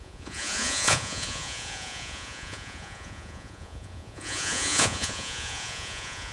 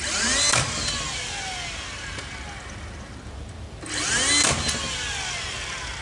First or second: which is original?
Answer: second